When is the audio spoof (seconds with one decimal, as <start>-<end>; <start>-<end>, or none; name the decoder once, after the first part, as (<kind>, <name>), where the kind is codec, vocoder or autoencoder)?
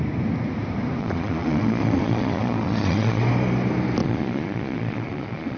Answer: 1.0-3.2 (vocoder, Vocos); 4.0-5.6